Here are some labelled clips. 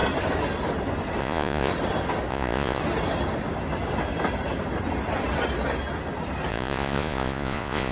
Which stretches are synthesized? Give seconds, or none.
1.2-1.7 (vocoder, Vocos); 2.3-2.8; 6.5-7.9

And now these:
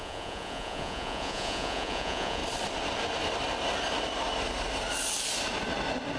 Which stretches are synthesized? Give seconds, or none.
0.0-2.4 (vocoder, Vocos)

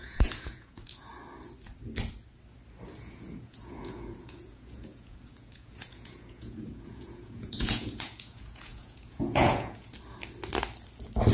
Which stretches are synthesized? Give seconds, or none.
0.0-1.1 (vocoder, Vocos); 3.0-9.9

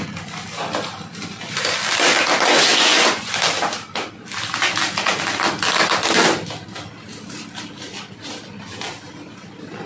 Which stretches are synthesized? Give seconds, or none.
2.7-3.3 (vocoder, Vocos)

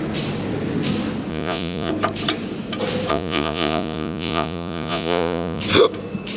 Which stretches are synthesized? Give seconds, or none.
1.3-1.9 (vocoder, Vocos); 3.1-5.6